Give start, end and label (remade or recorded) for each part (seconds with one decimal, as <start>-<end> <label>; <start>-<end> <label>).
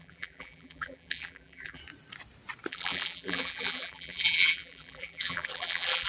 0.0-1.8 remade; 1.8-2.7 recorded; 2.7-6.1 remade